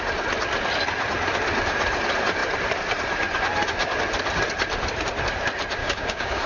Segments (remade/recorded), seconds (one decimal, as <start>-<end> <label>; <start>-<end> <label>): 0.0-5.8 recorded; 5.8-6.5 remade